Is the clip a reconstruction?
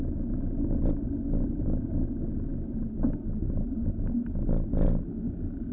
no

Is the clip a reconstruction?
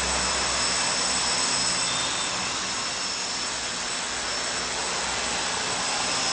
no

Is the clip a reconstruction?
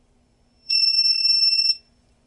yes